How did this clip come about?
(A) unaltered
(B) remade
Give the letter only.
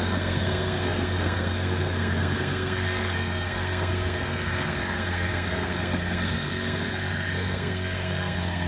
B